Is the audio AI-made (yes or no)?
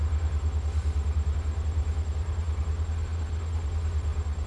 no